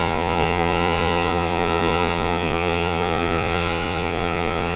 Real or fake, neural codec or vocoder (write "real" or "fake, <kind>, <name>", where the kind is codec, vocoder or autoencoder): fake, vocoder, Vocos